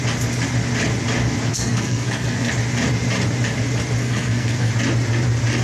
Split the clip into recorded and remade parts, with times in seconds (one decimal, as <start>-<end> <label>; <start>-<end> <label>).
0.0-1.5 recorded; 1.5-2.5 remade; 2.5-4.0 recorded; 4.0-4.7 remade; 4.7-5.6 recorded